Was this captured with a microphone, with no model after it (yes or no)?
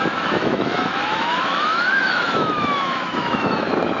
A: no